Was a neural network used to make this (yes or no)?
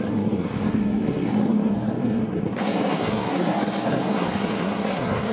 yes